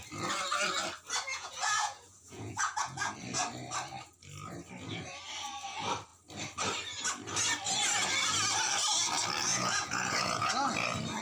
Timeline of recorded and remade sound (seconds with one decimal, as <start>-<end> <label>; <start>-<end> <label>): 0.0-1.3 recorded; 1.3-3.1 remade; 3.1-9.5 recorded; 9.5-10.5 remade; 10.5-11.2 recorded